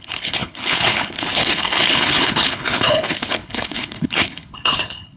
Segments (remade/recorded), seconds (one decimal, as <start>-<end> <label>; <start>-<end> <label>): 0.0-5.2 remade